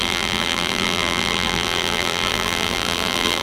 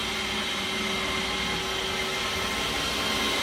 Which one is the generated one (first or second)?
first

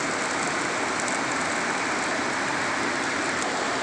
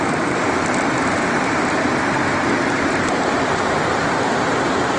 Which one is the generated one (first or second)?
second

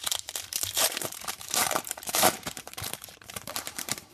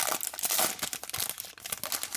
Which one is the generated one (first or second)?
first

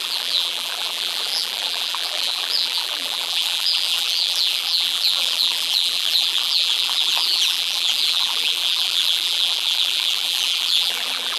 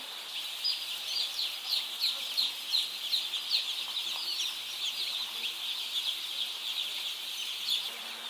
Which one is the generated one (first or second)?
first